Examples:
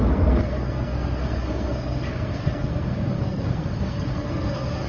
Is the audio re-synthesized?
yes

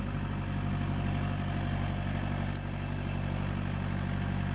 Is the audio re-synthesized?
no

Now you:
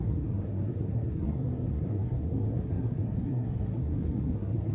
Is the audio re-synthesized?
yes